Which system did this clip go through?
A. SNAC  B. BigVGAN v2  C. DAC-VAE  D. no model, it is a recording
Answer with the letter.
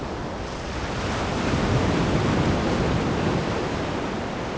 D